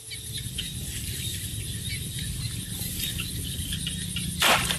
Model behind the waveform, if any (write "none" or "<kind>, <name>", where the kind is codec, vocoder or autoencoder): vocoder, BigVGAN v2